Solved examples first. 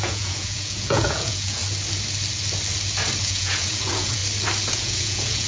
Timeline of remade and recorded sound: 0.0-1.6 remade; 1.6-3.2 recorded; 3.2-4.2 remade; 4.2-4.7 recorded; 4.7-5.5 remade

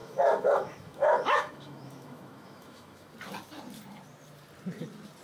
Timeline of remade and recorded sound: 0.0-3.1 remade; 3.1-5.2 recorded

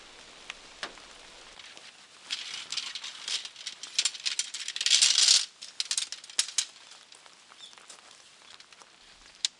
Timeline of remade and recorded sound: 0.0-9.6 recorded